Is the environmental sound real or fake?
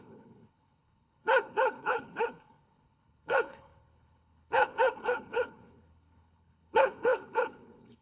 fake